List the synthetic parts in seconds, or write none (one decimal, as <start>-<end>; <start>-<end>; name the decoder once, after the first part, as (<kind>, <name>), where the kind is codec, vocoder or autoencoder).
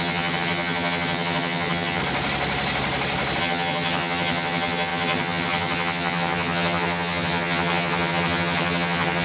0.0-2.0 (vocoder, HiFi-GAN); 3.4-9.2